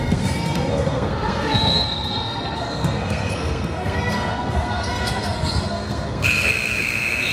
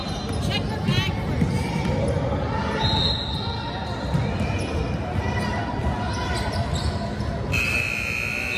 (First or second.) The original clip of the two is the second